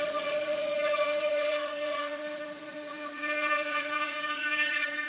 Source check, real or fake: fake